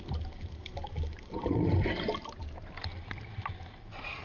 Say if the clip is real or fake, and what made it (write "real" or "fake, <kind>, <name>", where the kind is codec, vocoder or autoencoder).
real